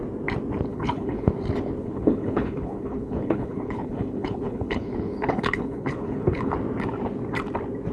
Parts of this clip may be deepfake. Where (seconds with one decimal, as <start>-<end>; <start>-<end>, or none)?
0.7-1.3; 1.8-6.5